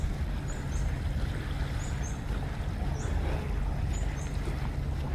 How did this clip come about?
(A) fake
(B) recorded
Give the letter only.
B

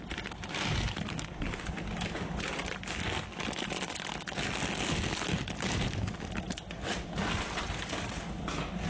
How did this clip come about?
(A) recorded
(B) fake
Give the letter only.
A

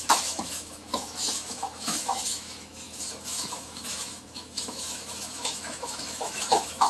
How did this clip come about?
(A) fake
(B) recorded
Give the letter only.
A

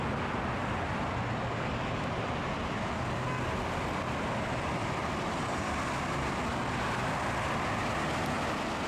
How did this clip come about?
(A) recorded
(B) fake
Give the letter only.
A